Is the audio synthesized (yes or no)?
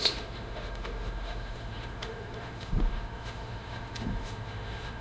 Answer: yes